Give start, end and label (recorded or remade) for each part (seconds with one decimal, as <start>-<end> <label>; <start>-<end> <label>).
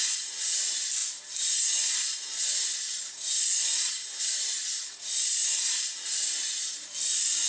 0.0-7.5 recorded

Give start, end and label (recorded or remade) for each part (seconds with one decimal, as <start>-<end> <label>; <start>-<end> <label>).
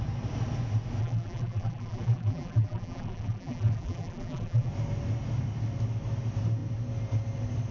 0.0-1.0 recorded; 1.0-4.7 remade; 4.7-7.7 recorded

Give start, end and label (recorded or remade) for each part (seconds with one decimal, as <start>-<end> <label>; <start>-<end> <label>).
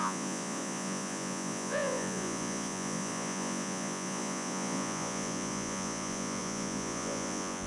0.0-7.7 remade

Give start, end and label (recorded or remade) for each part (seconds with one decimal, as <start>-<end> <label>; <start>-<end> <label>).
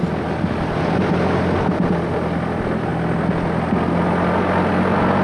0.0-5.2 recorded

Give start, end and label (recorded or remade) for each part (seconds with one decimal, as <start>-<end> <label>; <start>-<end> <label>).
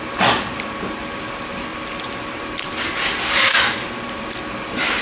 0.0-1.7 recorded; 1.7-3.6 remade; 3.6-5.0 recorded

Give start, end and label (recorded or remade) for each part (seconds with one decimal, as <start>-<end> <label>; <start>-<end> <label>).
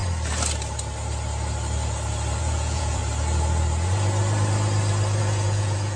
0.0-2.4 recorded; 2.4-3.0 remade; 3.0-5.2 recorded; 5.2-6.0 remade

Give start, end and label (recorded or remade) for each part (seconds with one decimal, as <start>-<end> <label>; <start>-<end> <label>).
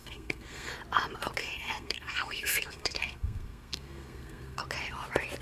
0.0-0.7 remade; 0.7-1.4 recorded; 1.4-4.6 remade; 4.6-5.4 recorded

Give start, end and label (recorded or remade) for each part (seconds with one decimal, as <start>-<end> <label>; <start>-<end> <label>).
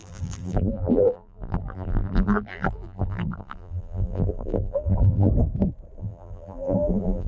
0.0-5.3 remade; 5.3-6.0 recorded; 6.0-7.3 remade